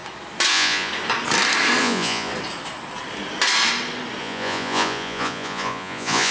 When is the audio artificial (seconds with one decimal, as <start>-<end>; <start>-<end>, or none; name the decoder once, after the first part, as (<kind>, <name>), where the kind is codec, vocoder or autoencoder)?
0.5-0.9 (vocoder, Vocos); 1.8-2.3; 4.2-6.3